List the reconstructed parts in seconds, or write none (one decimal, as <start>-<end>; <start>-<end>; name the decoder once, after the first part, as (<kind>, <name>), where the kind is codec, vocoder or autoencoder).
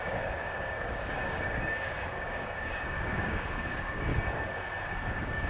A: 0.0-4.1 (codec, DAC); 4.9-5.5